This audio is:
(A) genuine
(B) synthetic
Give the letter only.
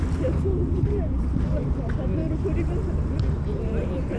B